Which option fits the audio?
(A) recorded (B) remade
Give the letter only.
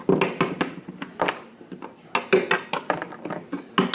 A